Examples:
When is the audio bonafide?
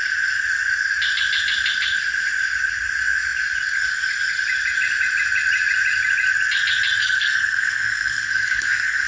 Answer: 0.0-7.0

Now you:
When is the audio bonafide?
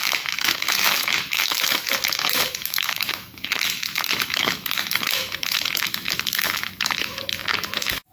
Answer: none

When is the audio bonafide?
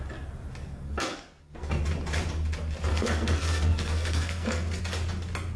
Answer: 0.0-0.6; 1.8-2.9; 4.8-5.6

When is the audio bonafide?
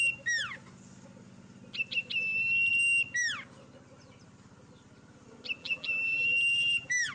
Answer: 0.0-5.6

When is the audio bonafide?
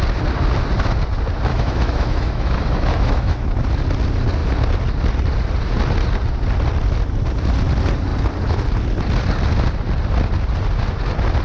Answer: 0.0-1.5; 3.7-11.4